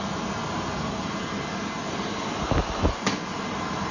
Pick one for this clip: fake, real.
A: real